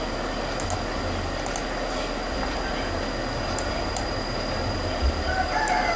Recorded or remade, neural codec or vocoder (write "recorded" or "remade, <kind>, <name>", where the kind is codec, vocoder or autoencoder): recorded